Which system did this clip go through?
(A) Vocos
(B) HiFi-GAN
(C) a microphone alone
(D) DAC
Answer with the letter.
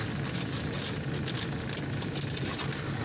C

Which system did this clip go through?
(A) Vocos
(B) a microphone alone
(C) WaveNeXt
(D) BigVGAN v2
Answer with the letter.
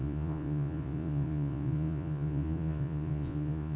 A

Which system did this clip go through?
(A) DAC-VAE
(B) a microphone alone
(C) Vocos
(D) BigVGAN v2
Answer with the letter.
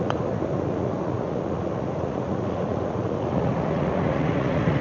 C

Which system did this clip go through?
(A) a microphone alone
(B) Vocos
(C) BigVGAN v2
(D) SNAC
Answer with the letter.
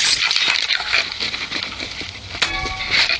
A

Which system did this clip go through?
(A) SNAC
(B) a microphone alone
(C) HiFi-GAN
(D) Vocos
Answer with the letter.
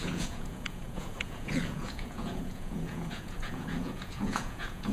D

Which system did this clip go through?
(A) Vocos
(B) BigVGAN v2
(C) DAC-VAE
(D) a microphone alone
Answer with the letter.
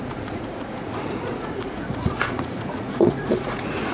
A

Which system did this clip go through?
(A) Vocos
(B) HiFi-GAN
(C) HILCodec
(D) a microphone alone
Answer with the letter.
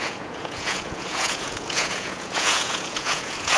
A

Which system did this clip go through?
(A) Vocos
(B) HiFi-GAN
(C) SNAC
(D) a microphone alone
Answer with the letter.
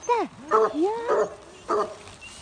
D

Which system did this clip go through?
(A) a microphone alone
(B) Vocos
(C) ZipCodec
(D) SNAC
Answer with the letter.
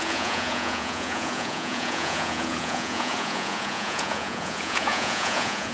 B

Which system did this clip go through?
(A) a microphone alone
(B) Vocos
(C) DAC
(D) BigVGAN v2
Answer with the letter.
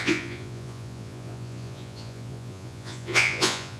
B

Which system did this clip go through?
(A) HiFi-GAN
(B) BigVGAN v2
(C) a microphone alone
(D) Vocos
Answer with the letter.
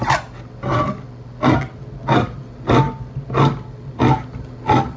C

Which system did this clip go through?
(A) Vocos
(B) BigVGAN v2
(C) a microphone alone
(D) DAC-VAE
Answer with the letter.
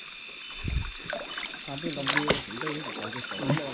C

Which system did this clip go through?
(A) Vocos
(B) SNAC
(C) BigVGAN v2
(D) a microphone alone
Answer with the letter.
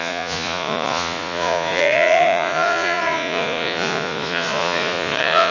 A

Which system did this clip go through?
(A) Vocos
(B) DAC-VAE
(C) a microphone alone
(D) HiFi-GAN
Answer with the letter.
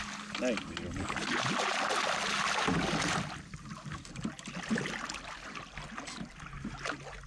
C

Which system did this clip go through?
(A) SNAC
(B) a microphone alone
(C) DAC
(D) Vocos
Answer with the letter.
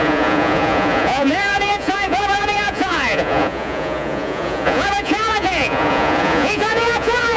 D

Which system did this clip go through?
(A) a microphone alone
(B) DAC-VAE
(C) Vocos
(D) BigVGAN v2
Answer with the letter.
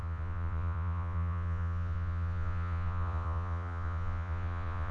C